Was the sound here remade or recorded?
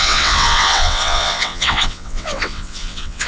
remade